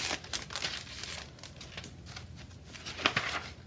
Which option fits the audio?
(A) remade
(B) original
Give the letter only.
B